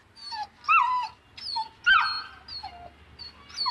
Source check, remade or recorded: recorded